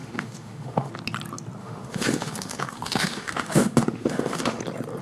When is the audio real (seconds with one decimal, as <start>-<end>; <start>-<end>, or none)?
0.9-1.6; 4.6-5.0